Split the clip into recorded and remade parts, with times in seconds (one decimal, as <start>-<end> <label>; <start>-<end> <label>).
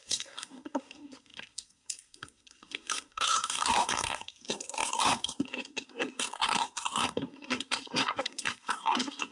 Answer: 0.0-9.3 remade